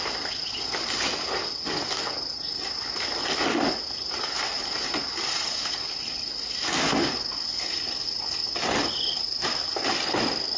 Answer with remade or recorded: recorded